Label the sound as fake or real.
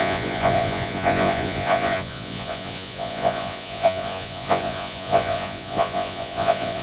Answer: fake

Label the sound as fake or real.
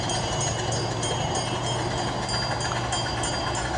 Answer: real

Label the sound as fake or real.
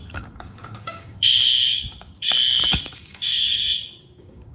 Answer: fake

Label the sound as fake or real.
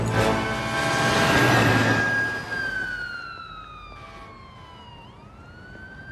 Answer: real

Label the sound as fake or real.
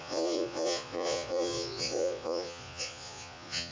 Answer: fake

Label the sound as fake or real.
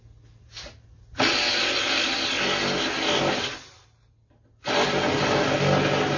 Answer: real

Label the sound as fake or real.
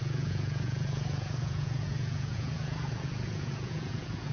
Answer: fake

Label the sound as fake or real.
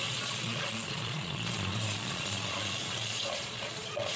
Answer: fake